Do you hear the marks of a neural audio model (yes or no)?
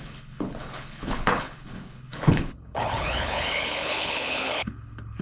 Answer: yes